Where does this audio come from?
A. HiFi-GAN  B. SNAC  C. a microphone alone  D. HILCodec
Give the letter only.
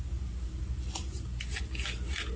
C